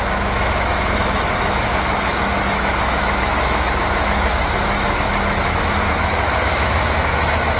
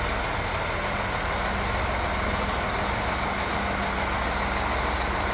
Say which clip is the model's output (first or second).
first